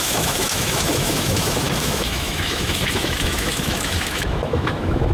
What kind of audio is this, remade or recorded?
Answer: remade